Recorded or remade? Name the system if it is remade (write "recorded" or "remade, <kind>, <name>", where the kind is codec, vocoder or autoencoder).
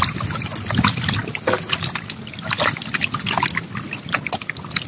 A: recorded